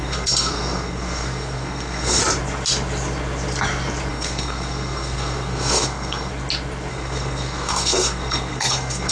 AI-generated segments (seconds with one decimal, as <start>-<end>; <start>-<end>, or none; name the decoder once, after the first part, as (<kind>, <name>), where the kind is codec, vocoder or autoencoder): 0.0-2.2 (codec, SNAC); 4.1-6.3; 6.9-9.1